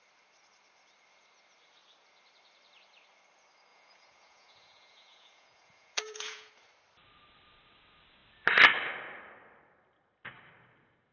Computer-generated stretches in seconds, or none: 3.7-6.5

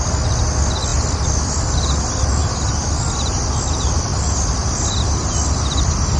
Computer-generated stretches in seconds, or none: none